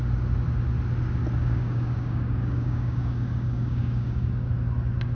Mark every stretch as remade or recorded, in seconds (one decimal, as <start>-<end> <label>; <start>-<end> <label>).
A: 0.0-1.4 recorded; 1.4-4.5 remade; 4.5-5.1 recorded